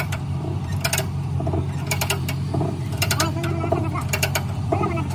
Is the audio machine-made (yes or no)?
yes